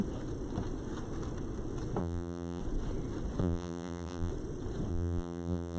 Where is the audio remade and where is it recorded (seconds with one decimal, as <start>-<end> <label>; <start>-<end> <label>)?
0.0-2.0 recorded; 2.0-2.6 remade; 2.6-3.4 recorded; 3.4-4.3 remade; 4.3-4.9 recorded; 4.9-5.8 remade